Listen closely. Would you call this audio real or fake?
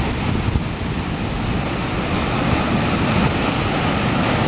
real